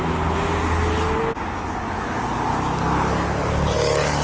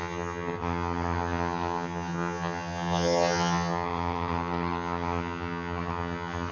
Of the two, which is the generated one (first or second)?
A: second